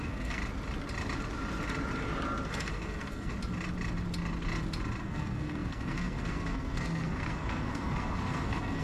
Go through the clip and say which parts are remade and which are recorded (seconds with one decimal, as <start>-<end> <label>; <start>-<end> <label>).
0.0-0.4 remade; 0.4-2.5 recorded; 2.5-3.3 remade; 3.3-5.0 recorded; 5.0-8.8 remade

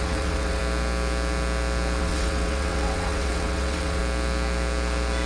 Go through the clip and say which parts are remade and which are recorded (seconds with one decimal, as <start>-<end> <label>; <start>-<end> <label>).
0.0-0.6 remade; 0.6-2.0 recorded; 2.0-4.0 remade; 4.0-5.3 recorded

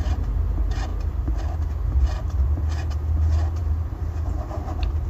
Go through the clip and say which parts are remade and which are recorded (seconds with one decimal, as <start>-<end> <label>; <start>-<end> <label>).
0.0-3.6 recorded; 3.6-4.3 remade; 4.3-5.1 recorded

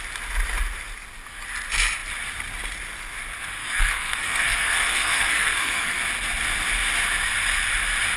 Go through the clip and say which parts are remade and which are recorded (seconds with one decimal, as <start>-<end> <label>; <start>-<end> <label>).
0.0-3.6 recorded; 3.6-6.0 remade; 6.0-8.2 recorded